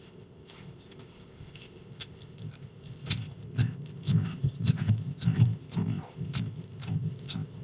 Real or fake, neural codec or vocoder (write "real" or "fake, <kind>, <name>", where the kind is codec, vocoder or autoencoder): fake, codec, ZipCodec